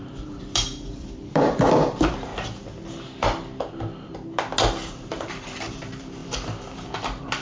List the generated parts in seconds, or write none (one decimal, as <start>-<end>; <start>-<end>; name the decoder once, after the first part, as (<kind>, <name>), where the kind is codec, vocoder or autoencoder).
0.0-2.3 (vocoder, BigVGAN v2); 4.9-7.4